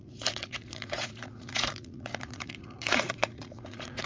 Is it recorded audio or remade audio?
remade